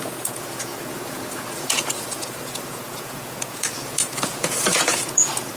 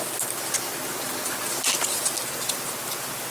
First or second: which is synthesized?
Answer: first